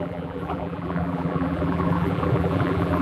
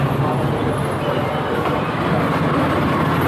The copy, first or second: first